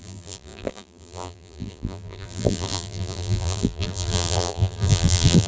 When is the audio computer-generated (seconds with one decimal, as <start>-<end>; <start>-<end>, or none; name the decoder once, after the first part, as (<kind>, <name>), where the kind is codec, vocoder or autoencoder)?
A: 0.0-5.5 (vocoder, BigVGAN v2)